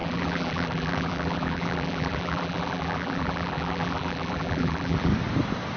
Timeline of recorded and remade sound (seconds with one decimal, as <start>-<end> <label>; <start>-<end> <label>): 0.0-5.1 remade; 5.1-5.8 recorded